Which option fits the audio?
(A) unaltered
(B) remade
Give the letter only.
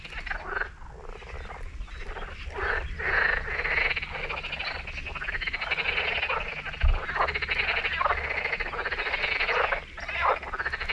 A